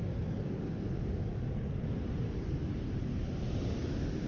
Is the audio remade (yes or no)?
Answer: no